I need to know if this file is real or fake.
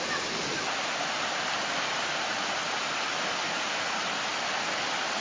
real